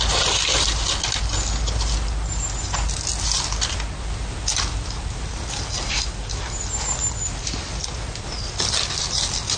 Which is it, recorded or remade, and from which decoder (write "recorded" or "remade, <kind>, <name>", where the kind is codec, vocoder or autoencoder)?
recorded